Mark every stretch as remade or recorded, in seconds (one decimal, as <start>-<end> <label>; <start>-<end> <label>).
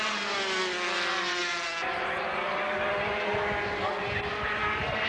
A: 0.0-5.1 recorded